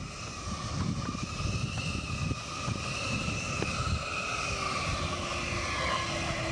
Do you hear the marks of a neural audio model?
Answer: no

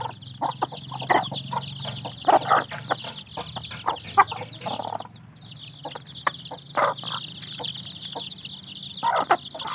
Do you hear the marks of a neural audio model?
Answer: no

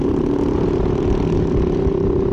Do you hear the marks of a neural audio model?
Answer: no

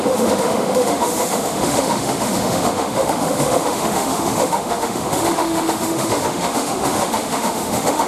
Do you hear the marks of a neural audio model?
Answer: yes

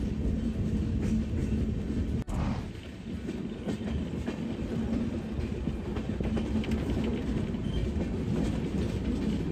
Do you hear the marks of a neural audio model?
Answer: no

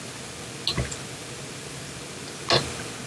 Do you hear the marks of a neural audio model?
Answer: no